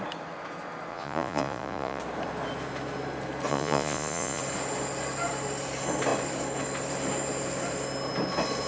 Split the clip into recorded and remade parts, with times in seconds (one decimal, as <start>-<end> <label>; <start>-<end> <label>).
0.0-0.9 recorded; 0.9-2.0 remade; 2.0-3.5 recorded; 3.5-4.4 remade; 4.4-8.7 recorded